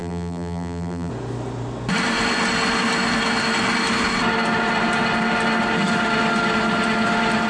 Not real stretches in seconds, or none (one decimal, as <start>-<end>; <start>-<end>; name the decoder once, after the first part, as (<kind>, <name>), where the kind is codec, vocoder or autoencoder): 0.0-1.1 (vocoder, BigVGAN v2)